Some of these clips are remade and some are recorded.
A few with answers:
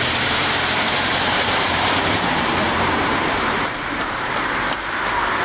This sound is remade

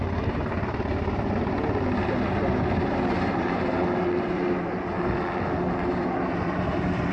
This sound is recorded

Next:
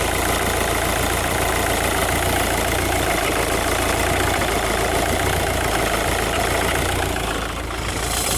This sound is recorded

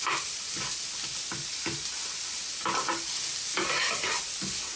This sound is recorded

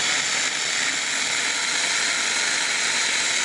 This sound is recorded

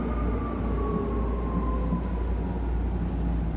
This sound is recorded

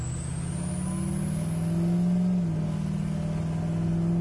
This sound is recorded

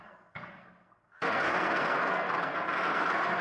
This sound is remade